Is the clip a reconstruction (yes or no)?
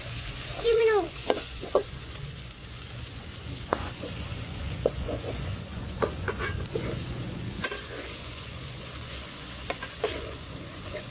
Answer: yes